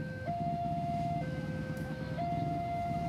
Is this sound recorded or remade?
remade